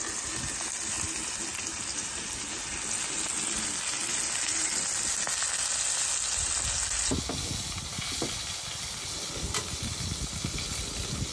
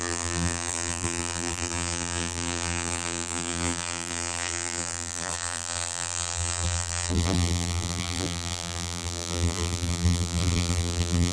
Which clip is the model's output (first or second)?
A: second